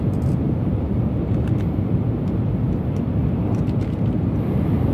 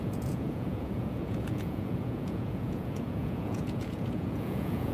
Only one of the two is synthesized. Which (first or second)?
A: second